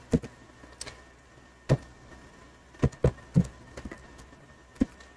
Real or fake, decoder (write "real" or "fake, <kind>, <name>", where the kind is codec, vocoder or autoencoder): real